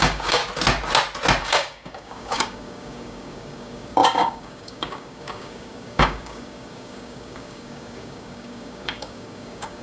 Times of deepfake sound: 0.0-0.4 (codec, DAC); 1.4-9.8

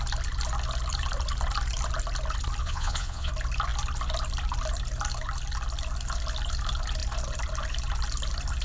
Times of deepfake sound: 2.6-3.3 (vocoder, Vocos)

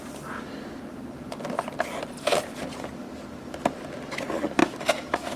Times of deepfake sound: 4.6-5.4 (autoencoder, DAC-VAE)